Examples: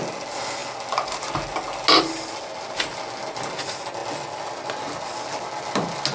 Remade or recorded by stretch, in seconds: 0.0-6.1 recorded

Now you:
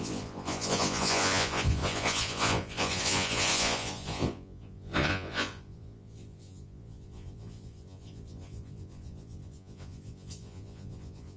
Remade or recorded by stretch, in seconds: 0.0-11.4 remade